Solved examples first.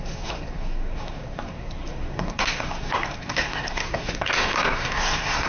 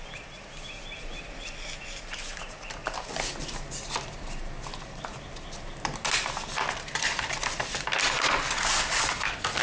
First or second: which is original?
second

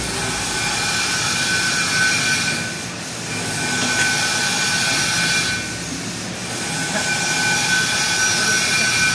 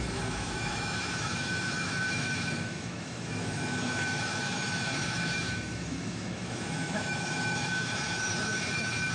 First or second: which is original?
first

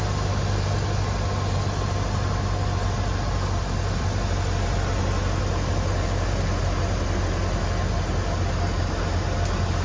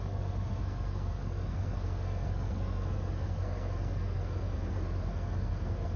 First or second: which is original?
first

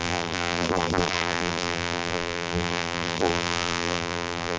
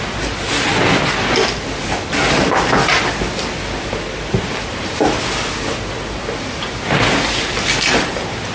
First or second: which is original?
second